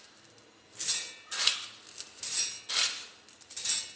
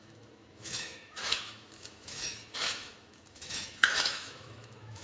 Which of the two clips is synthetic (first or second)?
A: second